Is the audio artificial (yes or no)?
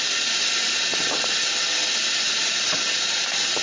no